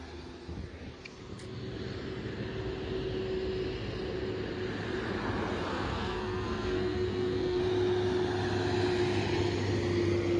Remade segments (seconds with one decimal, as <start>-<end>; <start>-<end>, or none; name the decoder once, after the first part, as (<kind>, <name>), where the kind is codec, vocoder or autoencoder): 5.7-7.6 (codec, SNAC)

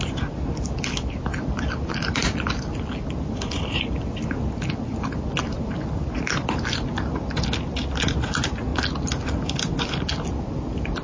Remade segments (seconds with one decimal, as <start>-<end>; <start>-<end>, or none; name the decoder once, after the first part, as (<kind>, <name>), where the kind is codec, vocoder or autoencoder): none

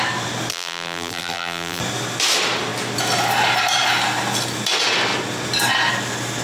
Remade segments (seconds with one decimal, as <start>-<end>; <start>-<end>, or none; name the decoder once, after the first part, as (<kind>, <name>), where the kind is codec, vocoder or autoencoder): 0.5-1.8 (vocoder, BigVGAN v2)

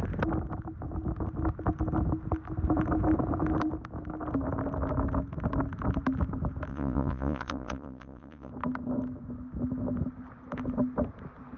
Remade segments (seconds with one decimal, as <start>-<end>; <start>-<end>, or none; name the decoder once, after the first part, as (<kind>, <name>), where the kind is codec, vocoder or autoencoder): 6.7-8.5 (vocoder, Vocos)